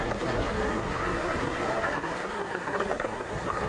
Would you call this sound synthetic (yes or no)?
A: yes